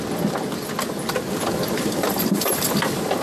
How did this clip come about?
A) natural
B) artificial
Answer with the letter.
A